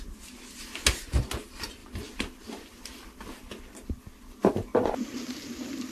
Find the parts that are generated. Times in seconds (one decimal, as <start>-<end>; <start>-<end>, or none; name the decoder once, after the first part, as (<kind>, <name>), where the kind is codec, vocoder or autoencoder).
1.8-3.6 (vocoder, BigVGAN v2); 4.4-5.9